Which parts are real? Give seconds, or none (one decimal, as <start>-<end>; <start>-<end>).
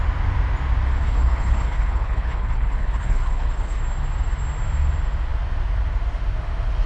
0.0-1.0; 3.8-6.9